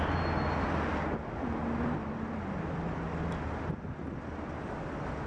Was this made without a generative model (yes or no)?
yes